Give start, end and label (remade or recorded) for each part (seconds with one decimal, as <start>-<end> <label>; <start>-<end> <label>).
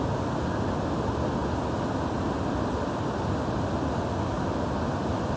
0.0-5.4 recorded